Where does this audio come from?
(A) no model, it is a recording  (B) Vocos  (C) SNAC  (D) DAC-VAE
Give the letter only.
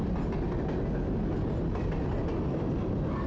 A